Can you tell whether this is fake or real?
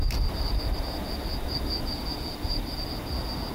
real